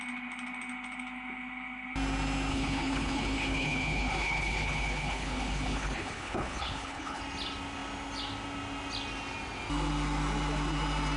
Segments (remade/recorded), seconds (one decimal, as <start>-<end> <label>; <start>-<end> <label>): 0.0-2.5 recorded; 2.5-7.2 remade; 7.2-11.2 recorded